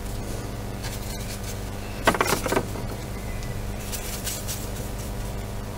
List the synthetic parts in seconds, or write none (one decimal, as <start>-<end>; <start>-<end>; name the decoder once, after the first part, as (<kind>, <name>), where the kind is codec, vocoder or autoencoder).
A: 0.8-1.4 (vocoder, BigVGAN v2); 3.0-5.8